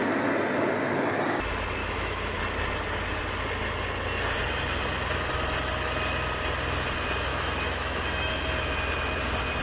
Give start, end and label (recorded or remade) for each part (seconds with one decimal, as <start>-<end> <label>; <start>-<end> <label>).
0.0-1.8 recorded; 1.8-2.4 remade; 2.4-7.3 recorded; 7.3-8.3 remade; 8.3-9.6 recorded